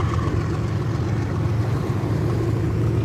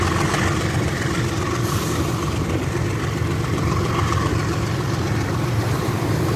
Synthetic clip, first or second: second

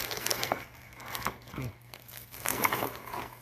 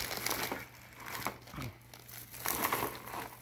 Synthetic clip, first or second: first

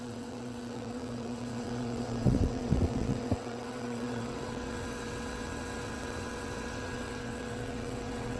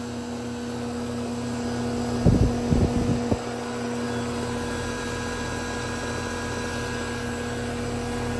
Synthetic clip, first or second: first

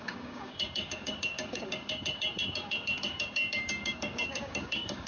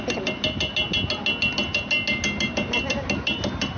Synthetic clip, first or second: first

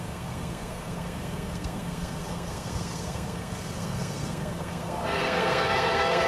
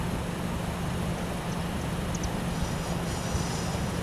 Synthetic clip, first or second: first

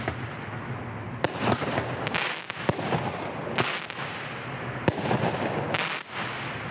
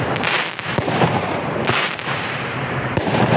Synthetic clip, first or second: second